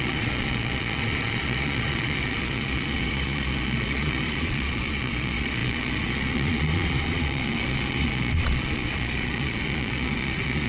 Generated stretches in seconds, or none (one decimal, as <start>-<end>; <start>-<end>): 0.0-10.7